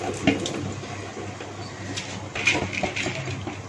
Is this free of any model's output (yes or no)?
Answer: yes